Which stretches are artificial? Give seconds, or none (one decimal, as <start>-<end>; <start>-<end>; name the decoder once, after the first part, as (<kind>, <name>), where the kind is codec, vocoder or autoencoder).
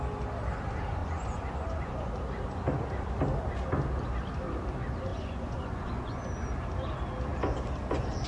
1.0-2.1 (vocoder, Vocos); 5.1-6.3